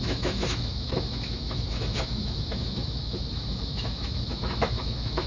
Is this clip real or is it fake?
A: fake